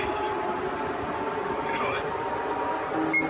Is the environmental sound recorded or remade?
recorded